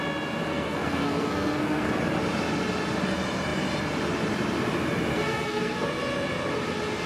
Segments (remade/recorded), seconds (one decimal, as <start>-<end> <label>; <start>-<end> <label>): 0.0-0.5 recorded; 0.5-1.9 remade; 1.9-5.1 recorded; 5.1-5.9 remade; 5.9-7.1 recorded